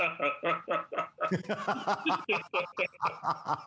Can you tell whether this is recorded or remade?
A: recorded